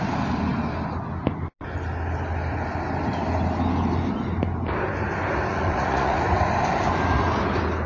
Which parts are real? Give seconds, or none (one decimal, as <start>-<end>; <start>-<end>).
0.0-5.5; 6.2-7.9